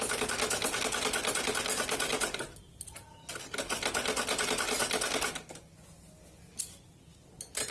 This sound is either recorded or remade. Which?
recorded